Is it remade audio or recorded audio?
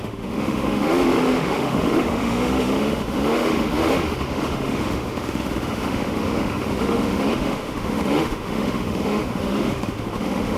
remade